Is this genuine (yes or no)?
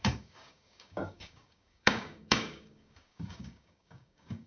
no